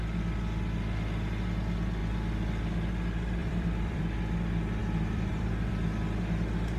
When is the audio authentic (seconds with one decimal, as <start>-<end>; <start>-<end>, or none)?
0.0-2.0; 2.5-3.4; 4.0-4.8; 5.7-6.8